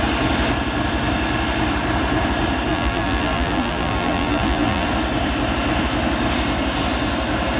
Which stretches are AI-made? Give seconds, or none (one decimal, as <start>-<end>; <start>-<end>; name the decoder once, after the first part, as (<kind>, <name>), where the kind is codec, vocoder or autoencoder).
2.7-4.9 (vocoder, BigVGAN v2)